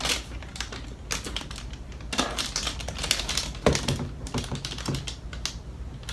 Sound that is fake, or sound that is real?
real